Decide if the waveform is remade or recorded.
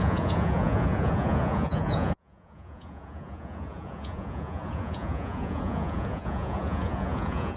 remade